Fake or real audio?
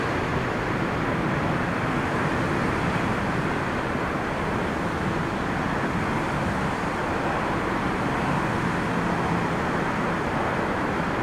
real